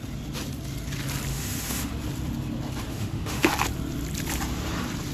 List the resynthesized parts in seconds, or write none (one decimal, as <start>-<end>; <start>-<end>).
1.3-1.9; 2.9-3.5